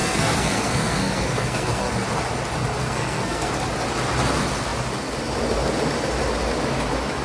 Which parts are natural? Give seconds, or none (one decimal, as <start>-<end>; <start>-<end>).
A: 1.9-2.8; 3.5-7.2